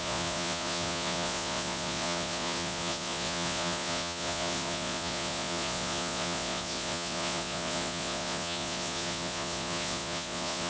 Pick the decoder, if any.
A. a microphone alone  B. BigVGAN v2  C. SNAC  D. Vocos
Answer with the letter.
D